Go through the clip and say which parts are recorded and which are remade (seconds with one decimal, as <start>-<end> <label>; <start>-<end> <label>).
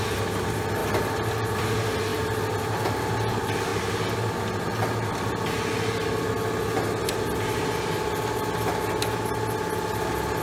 0.0-10.4 recorded